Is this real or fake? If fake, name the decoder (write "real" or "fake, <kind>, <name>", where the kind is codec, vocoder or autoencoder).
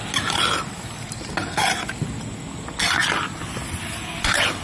real